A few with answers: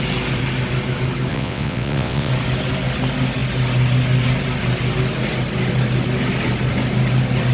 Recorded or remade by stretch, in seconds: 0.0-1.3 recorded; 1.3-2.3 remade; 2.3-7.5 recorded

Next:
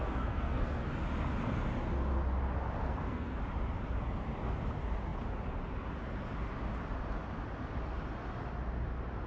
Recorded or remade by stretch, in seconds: 0.0-0.9 remade; 0.9-2.8 recorded; 2.8-3.4 remade; 3.4-9.3 recorded